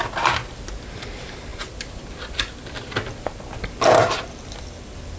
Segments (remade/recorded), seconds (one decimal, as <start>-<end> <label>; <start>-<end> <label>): 0.0-5.2 recorded

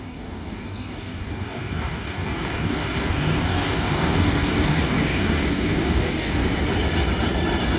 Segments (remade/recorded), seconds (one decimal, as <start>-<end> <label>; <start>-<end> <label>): 0.0-6.4 remade; 6.4-7.8 recorded

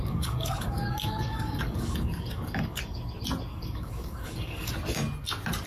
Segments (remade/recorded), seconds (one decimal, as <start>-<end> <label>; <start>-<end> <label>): 0.0-2.8 remade; 2.8-3.5 recorded; 3.5-4.7 remade; 4.7-5.7 recorded

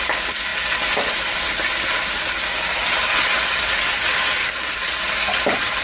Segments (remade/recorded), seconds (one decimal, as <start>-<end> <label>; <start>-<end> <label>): 0.0-4.1 recorded; 4.1-4.7 remade; 4.7-5.8 recorded

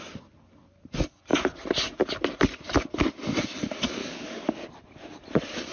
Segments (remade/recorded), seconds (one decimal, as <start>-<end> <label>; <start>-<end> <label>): 0.0-4.0 recorded; 4.0-4.7 remade; 4.7-5.7 recorded

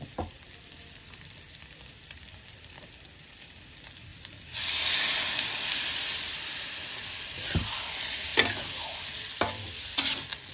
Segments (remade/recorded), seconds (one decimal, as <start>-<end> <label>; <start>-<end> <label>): 0.0-10.5 recorded